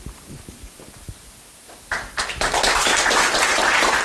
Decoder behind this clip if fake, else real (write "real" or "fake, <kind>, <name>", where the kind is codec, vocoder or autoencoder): fake, vocoder, BigVGAN v2